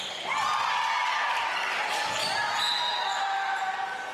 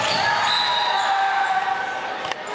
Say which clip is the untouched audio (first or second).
first